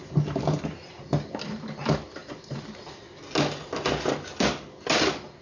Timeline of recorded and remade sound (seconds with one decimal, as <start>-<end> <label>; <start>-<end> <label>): 0.0-0.9 remade; 0.9-2.2 recorded; 2.2-3.0 remade; 3.0-5.4 recorded